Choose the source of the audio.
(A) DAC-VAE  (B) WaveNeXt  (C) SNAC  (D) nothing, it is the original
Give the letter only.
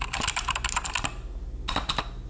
D